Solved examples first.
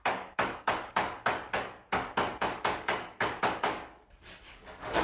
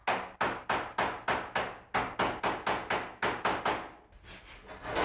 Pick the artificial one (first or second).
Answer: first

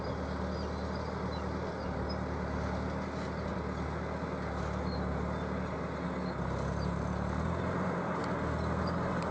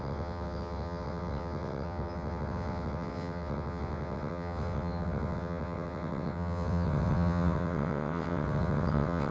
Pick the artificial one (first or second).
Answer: second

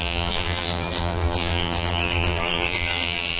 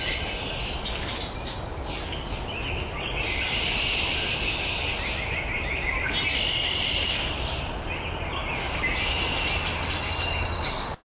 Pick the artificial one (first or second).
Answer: first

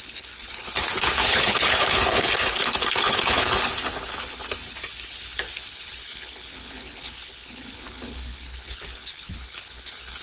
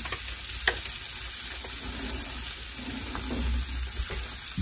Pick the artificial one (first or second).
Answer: first